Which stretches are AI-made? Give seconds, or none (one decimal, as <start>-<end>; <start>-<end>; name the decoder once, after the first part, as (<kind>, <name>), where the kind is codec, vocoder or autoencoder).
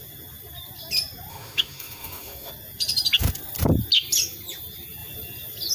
1.3-2.5 (autoencoder, DAC-VAE)